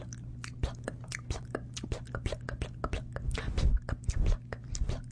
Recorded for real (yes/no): yes